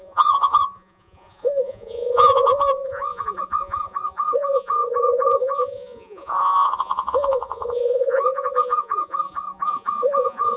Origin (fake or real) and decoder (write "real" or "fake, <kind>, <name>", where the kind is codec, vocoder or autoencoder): fake, vocoder, Vocos